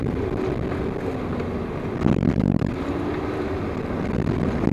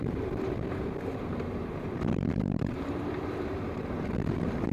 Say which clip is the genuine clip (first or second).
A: first